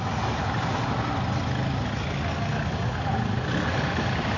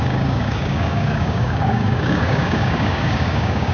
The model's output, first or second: second